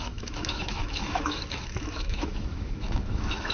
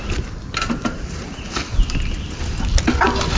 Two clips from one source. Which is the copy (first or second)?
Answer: first